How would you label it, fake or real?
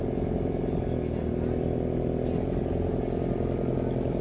real